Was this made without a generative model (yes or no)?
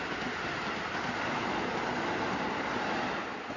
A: yes